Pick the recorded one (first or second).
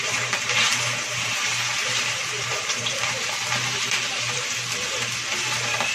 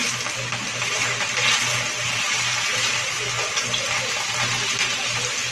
second